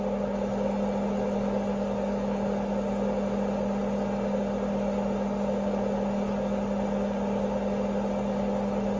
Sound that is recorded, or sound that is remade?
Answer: recorded